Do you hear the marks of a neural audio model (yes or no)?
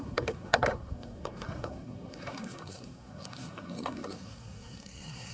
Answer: yes